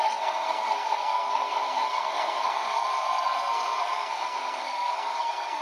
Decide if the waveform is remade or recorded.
remade